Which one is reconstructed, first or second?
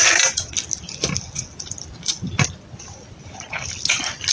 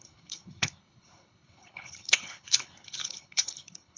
second